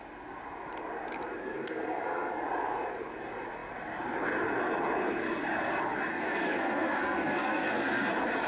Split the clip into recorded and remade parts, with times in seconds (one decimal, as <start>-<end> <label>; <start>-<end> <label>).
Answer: 0.0-1.4 recorded; 1.4-2.4 remade; 2.4-6.1 recorded; 6.1-8.1 remade; 8.1-8.5 recorded